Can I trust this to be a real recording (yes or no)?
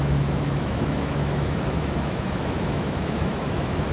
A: no